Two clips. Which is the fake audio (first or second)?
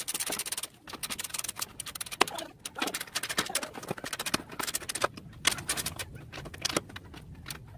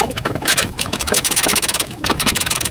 second